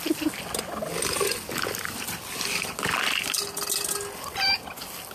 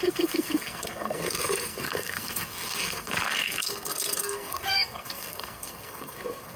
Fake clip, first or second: second